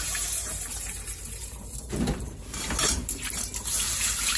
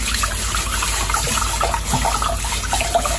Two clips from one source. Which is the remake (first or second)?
first